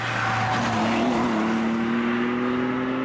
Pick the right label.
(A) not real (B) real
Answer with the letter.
B